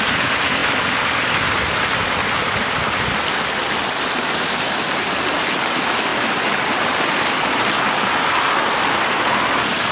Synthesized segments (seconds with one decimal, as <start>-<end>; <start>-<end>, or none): none